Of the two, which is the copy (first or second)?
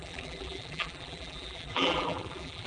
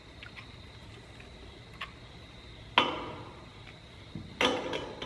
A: first